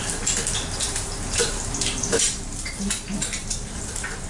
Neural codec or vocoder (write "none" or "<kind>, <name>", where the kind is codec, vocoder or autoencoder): vocoder, BigVGAN v2